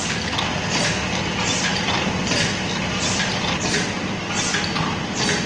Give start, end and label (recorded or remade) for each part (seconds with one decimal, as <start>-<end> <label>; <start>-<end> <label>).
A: 0.0-5.5 recorded